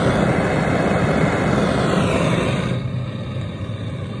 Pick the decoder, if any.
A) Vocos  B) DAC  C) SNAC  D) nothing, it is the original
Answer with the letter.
D